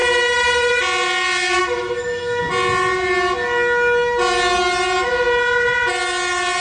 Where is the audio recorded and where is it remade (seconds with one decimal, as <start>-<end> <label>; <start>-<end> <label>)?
0.0-1.6 recorded; 1.6-2.4 remade; 2.4-6.6 recorded